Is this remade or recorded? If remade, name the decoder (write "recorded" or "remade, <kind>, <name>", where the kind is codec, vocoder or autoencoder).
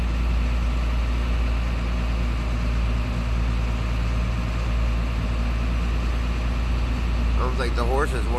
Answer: recorded